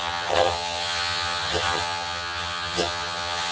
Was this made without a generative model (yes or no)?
no